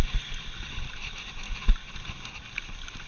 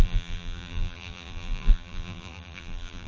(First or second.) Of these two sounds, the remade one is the second